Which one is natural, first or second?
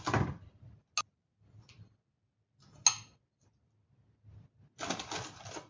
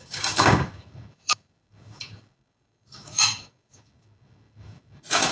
first